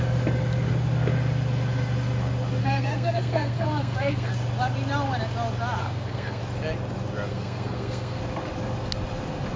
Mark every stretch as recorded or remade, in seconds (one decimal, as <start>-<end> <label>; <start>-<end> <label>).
0.0-2.6 recorded; 2.6-4.3 remade; 4.3-5.8 recorded; 5.8-6.4 remade; 6.4-7.3 recorded; 7.3-8.2 remade; 8.2-9.6 recorded